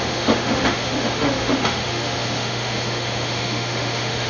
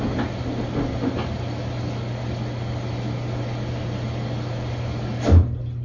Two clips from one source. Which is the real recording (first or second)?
second